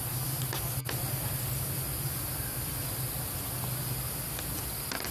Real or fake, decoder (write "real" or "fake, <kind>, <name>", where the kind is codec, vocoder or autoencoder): real